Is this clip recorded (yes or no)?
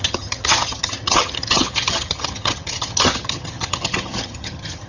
no